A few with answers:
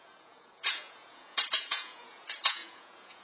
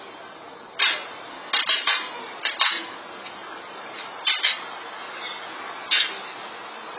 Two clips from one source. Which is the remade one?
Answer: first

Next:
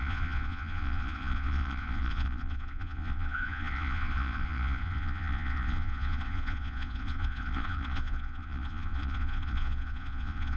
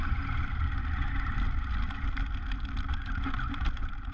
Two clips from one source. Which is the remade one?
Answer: first